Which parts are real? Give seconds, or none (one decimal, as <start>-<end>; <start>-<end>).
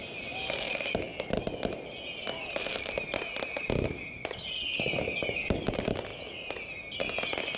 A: 0.0-7.6